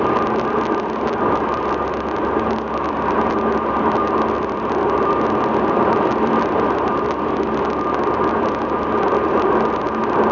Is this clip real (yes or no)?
no